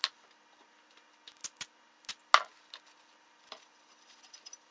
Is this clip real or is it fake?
real